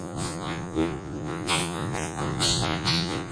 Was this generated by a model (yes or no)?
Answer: yes